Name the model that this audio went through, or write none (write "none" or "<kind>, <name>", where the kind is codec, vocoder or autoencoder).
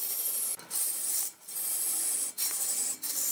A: none